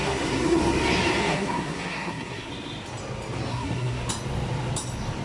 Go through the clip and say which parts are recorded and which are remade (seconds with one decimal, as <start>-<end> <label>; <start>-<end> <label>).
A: 0.0-0.6 remade; 0.6-1.2 recorded; 1.2-2.5 remade; 2.5-3.5 recorded; 3.5-4.1 remade; 4.1-5.2 recorded